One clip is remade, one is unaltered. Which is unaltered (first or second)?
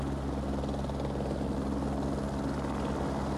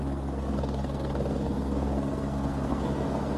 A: first